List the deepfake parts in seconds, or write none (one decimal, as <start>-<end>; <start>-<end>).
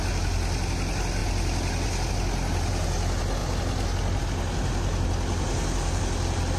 none